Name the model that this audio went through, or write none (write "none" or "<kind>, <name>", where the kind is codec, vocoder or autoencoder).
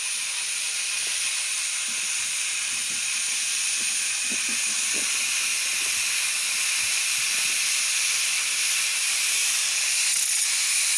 none